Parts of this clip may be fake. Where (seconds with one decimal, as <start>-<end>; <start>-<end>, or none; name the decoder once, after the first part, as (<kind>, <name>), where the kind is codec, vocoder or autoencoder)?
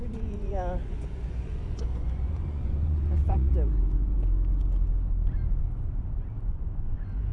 0.0-3.5 (vocoder, Vocos); 6.2-7.3